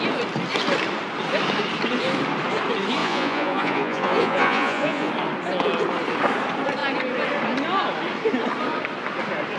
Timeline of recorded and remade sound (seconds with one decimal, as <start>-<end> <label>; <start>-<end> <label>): 0.0-3.0 recorded; 3.0-5.1 remade; 5.1-9.6 recorded